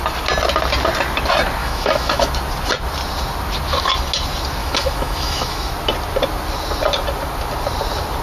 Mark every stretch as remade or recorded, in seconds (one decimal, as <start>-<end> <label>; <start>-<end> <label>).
0.0-1.6 recorded; 1.6-2.3 remade; 2.3-4.6 recorded; 4.6-5.7 remade; 5.7-8.2 recorded

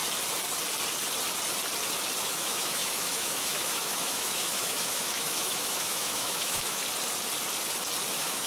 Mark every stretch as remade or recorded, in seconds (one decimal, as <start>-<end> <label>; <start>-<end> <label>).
0.0-2.2 recorded; 2.2-6.8 remade; 6.8-8.1 recorded; 8.1-8.5 remade

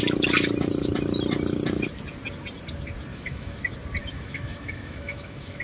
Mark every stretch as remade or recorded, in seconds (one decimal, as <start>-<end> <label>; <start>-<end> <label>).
0.0-3.1 recorded; 3.1-3.6 remade; 3.6-4.0 recorded; 4.0-5.6 remade

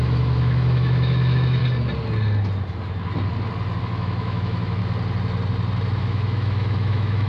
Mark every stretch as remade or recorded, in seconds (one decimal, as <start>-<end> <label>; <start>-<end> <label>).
0.0-1.6 remade; 1.6-3.8 recorded; 3.8-4.8 remade; 4.8-6.0 recorded; 6.0-7.3 remade

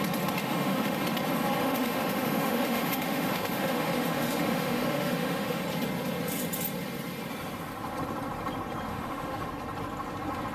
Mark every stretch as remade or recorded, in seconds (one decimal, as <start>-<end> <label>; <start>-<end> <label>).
0.0-0.4 recorded; 0.4-1.0 remade; 1.0-1.6 recorded; 1.6-5.6 remade; 5.6-8.9 recorded; 8.9-9.5 remade; 9.5-10.5 recorded

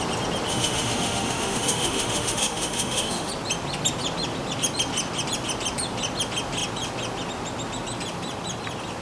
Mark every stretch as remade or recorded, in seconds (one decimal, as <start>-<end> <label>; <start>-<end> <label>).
0.0-0.5 recorded; 0.5-3.3 remade; 3.3-9.0 recorded